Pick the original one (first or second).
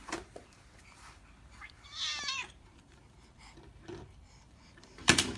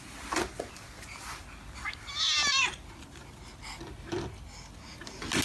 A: second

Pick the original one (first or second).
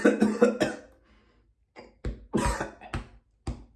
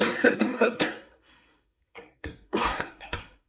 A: first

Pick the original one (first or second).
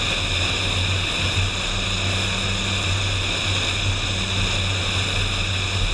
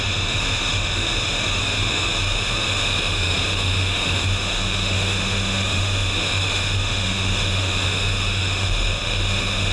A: first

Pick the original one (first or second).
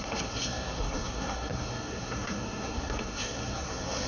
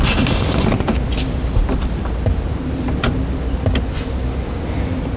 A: second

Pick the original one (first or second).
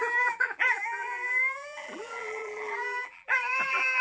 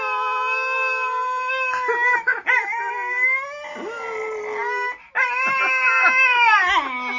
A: second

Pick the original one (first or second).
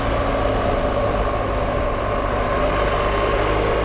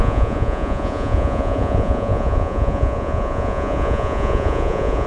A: first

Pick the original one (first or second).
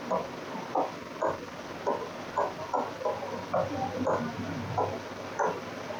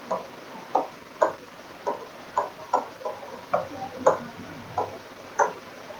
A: first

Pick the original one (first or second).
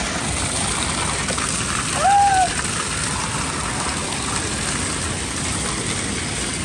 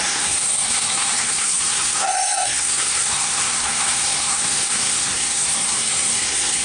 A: first